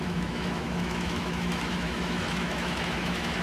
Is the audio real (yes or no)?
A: no